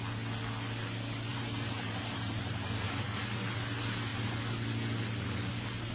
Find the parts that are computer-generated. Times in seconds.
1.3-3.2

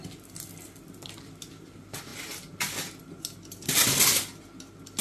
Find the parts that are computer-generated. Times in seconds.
none